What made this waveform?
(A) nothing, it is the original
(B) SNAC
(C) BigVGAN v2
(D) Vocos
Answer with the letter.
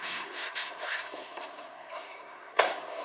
B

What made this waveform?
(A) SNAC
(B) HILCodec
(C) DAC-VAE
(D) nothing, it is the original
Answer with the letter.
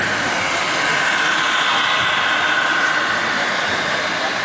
D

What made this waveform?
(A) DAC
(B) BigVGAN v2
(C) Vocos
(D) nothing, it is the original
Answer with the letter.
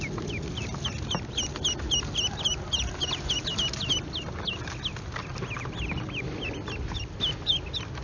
D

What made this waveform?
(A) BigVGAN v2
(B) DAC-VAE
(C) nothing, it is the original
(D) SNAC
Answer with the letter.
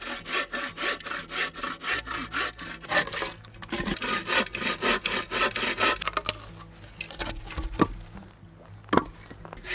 C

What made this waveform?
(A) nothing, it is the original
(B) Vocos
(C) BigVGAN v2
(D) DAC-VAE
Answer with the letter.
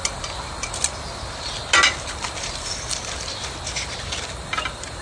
A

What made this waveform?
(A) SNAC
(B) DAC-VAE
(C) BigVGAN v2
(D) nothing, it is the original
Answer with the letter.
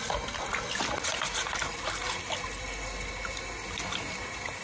D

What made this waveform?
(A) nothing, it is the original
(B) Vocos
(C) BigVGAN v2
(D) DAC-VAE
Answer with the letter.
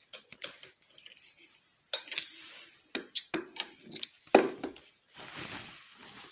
A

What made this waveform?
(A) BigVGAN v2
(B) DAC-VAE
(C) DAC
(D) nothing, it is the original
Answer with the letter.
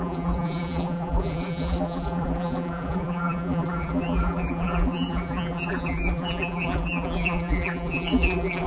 A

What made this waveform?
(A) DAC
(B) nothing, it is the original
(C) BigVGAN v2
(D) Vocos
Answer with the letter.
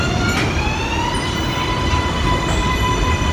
C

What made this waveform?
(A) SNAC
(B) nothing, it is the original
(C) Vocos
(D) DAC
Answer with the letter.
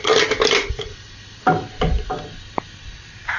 B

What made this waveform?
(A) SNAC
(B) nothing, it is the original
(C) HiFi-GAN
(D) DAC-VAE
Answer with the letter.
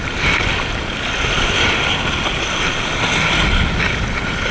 B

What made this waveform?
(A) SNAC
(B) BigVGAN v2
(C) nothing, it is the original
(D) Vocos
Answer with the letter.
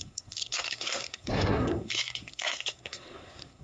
A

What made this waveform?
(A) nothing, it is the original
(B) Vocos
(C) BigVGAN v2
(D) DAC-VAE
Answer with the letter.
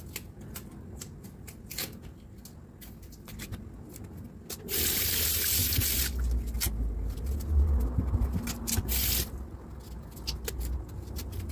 A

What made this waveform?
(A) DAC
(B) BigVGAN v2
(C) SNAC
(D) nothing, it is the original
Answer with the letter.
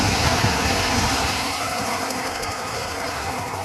C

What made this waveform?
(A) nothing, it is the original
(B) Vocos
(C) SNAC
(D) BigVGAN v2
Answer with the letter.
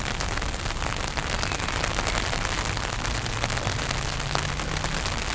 A